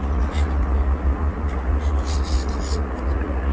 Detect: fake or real fake